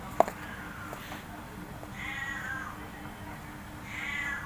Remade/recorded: recorded